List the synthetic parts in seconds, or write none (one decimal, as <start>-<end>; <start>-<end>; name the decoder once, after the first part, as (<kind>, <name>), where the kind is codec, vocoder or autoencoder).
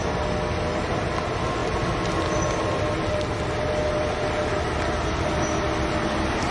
none